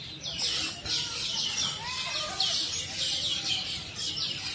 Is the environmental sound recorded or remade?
recorded